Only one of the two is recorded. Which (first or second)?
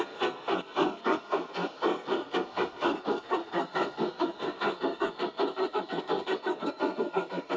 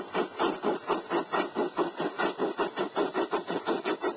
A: second